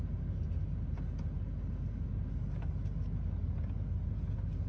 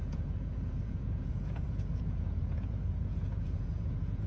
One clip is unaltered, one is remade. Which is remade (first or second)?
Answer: second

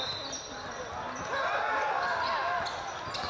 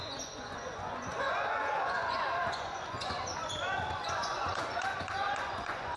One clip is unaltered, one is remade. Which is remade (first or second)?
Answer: second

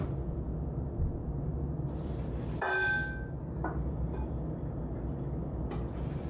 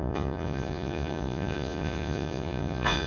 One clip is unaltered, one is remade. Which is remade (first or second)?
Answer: second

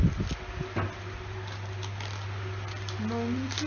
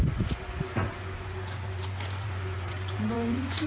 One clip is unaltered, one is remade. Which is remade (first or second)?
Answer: second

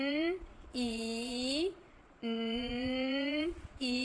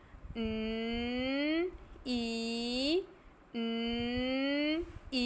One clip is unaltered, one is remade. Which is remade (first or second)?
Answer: first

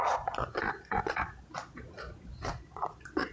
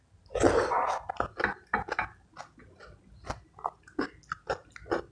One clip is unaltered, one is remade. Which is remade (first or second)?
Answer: first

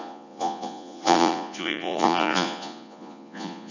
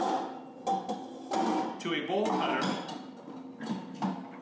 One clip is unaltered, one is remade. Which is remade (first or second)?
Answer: first